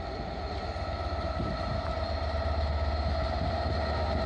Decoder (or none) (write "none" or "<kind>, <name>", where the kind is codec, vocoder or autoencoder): none